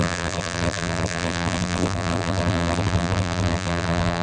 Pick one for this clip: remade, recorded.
remade